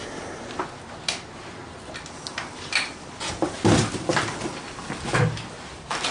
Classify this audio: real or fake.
real